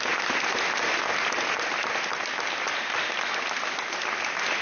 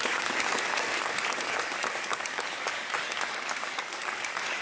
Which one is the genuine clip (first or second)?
first